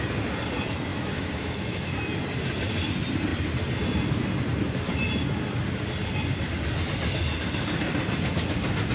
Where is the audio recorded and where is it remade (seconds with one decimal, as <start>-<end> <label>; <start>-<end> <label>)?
0.0-0.9 recorded; 0.9-1.9 remade; 1.9-8.9 recorded